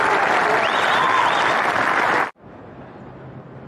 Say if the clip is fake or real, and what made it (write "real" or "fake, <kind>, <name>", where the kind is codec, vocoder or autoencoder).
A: real